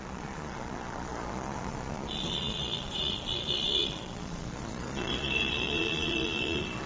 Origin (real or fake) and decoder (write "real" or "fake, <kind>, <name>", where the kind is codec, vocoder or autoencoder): fake, vocoder, Vocos